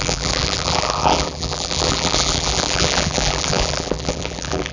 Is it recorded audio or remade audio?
remade